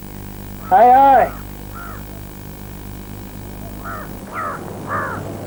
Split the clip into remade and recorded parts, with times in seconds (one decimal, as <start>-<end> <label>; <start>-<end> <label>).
0.0-5.5 recorded